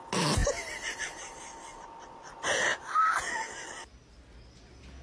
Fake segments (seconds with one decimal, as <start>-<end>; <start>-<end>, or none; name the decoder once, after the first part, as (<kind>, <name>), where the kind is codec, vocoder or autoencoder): none